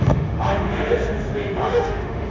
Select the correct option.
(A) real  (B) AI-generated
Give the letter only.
B